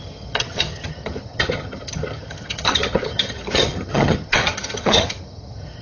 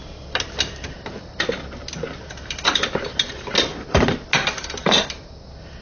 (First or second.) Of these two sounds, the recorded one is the second